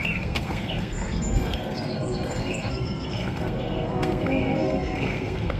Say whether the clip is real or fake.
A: fake